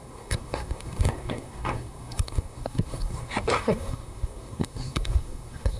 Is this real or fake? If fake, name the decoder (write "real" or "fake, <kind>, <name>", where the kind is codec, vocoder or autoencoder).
fake, codec, SNAC